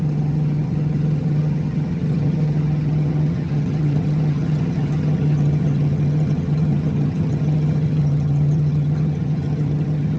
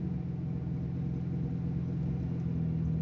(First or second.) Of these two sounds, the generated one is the first